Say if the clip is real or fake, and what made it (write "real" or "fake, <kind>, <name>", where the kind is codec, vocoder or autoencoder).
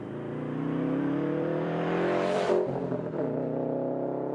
fake, vocoder, BigVGAN v2